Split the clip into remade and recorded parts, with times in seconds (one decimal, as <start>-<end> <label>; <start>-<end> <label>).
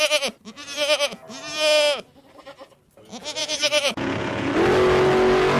0.0-3.4 recorded; 3.4-4.5 remade; 4.5-5.6 recorded